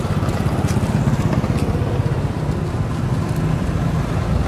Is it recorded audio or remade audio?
recorded